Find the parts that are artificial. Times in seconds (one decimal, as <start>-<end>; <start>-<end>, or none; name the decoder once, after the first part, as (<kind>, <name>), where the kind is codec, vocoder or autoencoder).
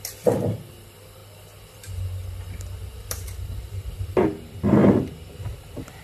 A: 0.0-1.2 (vocoder, BigVGAN v2); 3.4-4.8; 5.4-6.0